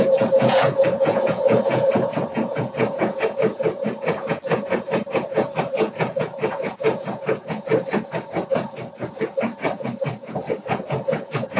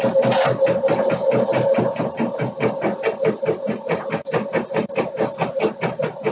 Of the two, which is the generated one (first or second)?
first